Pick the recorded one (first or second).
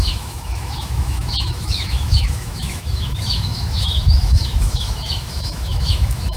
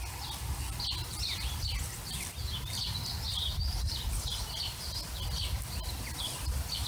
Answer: second